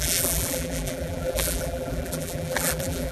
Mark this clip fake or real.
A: fake